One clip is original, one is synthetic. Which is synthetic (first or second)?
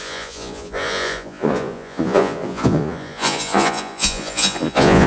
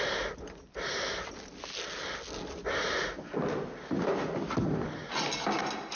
first